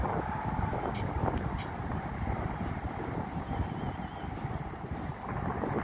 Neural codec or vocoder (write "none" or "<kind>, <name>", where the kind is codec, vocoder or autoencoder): none